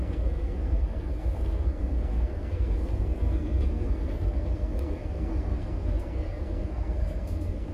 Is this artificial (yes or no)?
yes